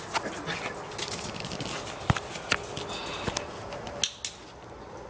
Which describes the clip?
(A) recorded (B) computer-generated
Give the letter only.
A